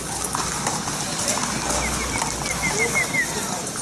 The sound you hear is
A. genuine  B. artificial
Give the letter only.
A